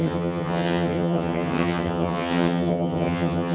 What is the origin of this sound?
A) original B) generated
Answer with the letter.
B